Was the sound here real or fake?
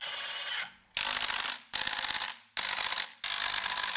real